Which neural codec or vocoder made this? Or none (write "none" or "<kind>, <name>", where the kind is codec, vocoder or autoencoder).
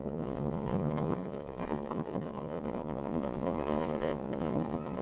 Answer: vocoder, Vocos